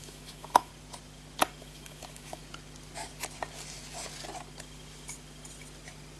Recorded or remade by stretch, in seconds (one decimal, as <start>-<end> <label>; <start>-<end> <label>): 0.0-0.7 remade; 0.7-1.6 recorded; 1.6-2.4 remade; 2.4-6.2 recorded